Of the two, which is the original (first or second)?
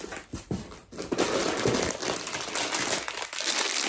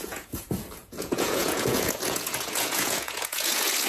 first